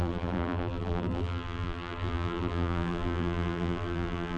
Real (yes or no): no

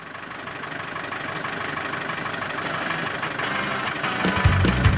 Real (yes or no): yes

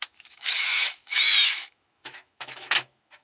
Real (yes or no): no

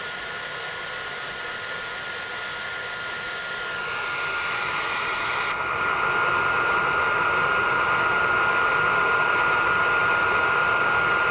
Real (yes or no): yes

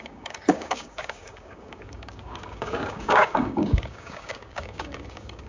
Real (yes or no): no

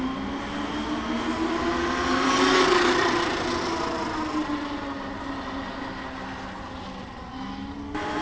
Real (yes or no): yes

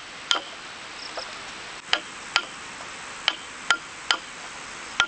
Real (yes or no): yes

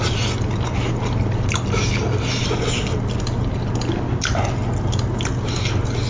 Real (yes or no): yes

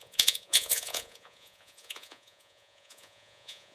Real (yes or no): no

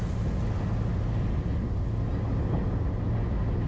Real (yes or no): yes